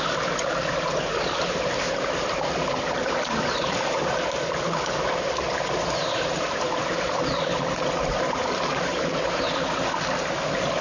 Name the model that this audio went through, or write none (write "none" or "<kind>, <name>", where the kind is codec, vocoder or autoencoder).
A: none